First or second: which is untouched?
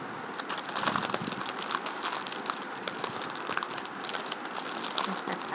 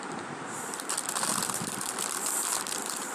first